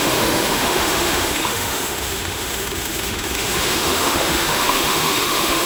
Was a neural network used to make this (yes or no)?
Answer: yes